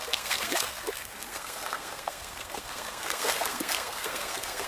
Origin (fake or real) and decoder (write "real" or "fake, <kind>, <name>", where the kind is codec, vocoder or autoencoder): fake, codec, SNAC